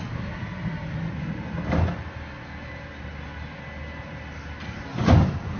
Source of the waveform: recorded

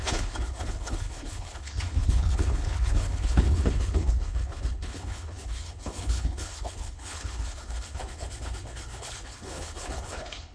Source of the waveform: remade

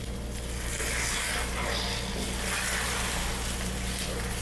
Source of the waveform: recorded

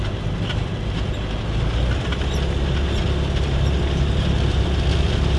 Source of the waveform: recorded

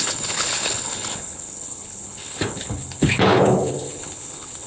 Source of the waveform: remade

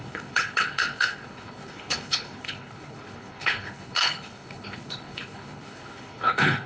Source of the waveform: remade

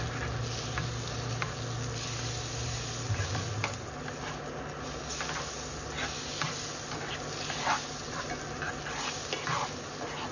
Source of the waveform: recorded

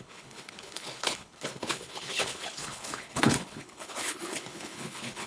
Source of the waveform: remade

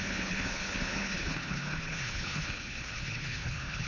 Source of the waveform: remade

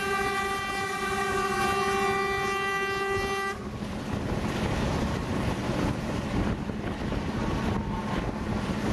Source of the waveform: recorded